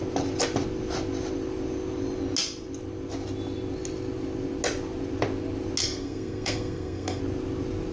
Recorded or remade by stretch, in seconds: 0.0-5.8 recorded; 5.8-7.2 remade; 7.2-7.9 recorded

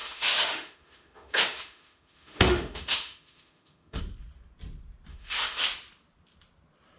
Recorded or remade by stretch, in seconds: 0.0-4.0 remade; 4.0-5.1 recorded; 5.1-5.6 remade; 5.6-7.0 recorded

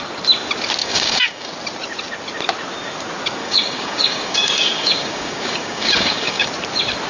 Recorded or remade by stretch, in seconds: 0.0-0.8 recorded; 0.8-1.5 remade; 1.5-3.4 recorded; 3.4-6.5 remade; 6.5-7.1 recorded